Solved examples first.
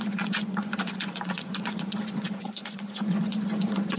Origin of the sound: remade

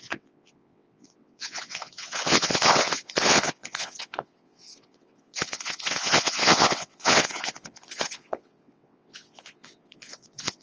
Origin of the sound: remade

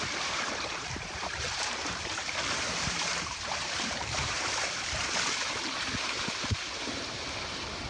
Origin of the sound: remade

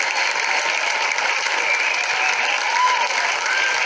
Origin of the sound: recorded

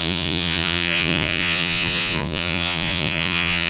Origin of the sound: remade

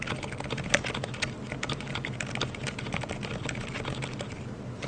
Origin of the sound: recorded